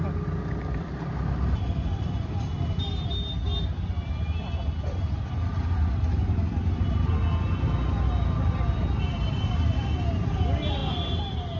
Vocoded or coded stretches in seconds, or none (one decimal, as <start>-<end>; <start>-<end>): none